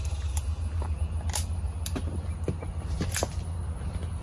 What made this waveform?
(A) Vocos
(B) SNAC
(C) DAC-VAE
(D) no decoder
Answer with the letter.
D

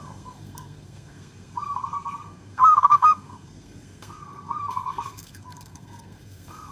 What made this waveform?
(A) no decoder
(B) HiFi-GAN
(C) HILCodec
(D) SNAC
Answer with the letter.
D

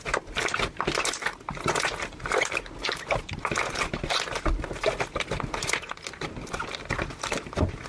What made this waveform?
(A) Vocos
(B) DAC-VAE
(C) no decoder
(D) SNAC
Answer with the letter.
C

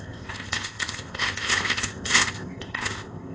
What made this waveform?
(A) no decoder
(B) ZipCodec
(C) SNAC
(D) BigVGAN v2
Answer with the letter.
B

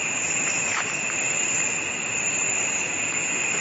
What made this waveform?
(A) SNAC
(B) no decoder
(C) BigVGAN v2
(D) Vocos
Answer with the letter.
B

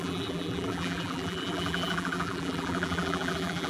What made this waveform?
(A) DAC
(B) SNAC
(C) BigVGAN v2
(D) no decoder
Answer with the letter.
C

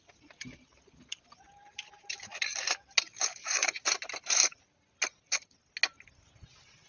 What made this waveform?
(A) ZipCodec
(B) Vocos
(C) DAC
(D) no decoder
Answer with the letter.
D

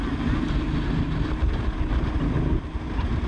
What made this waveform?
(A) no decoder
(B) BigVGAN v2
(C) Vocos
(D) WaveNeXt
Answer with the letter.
A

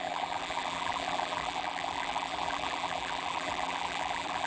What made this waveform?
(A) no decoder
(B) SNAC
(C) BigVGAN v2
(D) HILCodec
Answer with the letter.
C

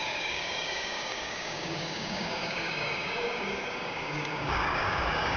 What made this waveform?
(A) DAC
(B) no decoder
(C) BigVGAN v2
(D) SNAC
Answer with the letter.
A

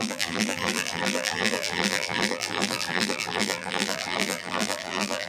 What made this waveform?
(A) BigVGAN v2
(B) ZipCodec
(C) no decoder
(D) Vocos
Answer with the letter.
A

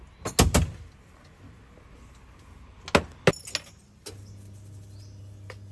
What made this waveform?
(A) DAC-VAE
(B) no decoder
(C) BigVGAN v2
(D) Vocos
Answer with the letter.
B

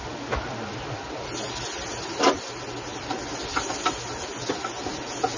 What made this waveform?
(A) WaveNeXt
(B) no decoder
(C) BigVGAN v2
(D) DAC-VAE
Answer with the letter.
B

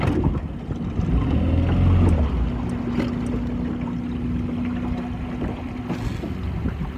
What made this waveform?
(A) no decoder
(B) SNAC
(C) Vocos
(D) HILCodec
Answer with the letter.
A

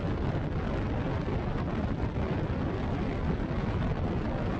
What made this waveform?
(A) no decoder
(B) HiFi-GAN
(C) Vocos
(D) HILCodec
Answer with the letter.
A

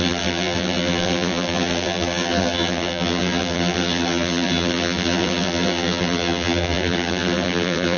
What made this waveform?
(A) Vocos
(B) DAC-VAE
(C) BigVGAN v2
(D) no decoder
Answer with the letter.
C